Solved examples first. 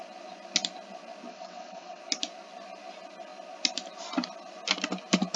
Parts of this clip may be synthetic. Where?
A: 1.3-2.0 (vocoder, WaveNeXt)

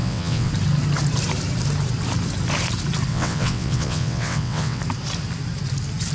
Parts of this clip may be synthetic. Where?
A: 0.0-0.5 (vocoder, WaveNeXt); 3.1-4.8

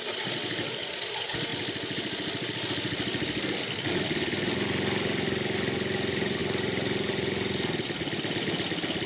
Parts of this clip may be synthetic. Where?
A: none